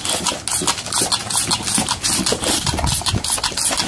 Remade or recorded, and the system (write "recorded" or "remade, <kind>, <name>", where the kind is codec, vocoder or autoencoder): recorded